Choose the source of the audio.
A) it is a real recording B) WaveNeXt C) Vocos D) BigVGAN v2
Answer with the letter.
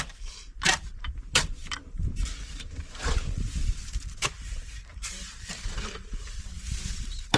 D